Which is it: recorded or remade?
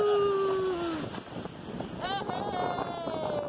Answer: recorded